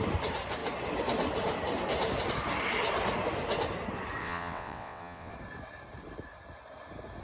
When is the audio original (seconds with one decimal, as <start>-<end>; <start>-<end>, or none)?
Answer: 0.0-4.2; 5.3-7.2